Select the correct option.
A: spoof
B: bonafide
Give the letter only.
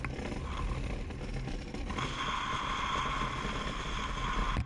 B